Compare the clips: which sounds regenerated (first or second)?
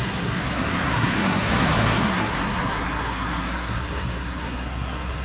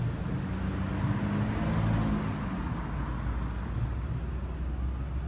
first